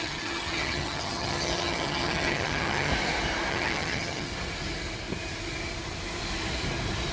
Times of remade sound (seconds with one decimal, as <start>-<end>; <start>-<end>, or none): 0.0-2.9; 3.5-4.3